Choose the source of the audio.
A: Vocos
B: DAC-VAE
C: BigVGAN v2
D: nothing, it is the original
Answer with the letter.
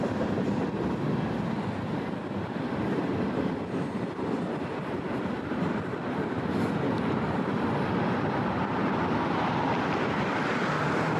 D